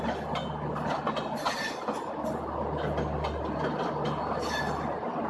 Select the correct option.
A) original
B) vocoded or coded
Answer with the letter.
A